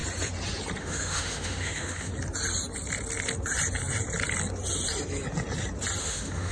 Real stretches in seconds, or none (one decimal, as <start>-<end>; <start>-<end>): 0.0-0.8; 2.1-6.0